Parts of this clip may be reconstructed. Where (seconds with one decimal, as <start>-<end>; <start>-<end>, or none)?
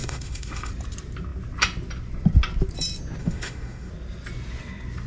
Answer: 0.0-0.7; 3.2-3.9